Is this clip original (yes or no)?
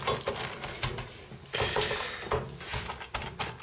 yes